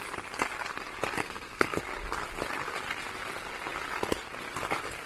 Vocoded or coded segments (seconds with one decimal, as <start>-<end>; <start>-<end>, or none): 1.2-1.8